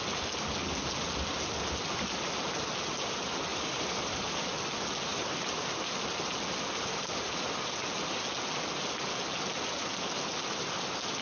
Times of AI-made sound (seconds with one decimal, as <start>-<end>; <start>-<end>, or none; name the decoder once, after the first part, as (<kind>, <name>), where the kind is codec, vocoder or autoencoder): 3.5-4.4 (vocoder, BigVGAN v2); 5.1-5.9